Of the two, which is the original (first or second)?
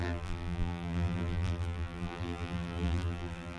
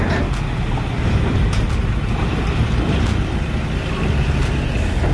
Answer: second